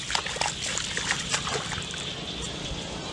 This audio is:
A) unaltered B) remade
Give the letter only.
A